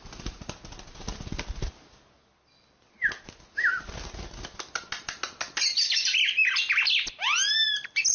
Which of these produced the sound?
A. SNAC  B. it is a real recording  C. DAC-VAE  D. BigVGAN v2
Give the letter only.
B